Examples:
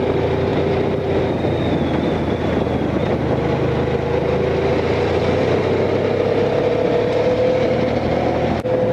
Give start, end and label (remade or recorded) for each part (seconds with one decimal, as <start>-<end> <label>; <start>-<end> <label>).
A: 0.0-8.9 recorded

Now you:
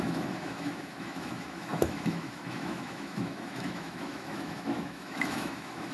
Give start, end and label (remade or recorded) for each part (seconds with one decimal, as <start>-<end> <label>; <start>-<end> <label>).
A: 0.0-5.9 remade

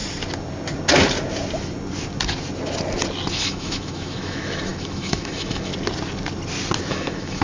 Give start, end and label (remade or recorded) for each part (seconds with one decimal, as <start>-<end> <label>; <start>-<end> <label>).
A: 0.0-3.3 recorded; 3.3-5.7 remade; 5.7-6.9 recorded; 6.9-7.4 remade

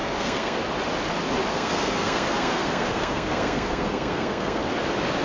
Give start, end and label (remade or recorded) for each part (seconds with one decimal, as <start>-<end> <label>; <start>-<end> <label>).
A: 0.0-0.6 remade; 0.6-1.5 recorded; 1.5-4.6 remade; 4.6-5.2 recorded